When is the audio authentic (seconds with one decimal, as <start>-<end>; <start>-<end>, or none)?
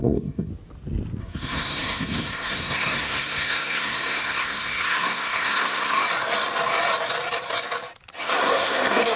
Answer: 0.5-1.2; 6.0-8.2